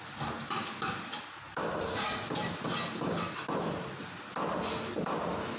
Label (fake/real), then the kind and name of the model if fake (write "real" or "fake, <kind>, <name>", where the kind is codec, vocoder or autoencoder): real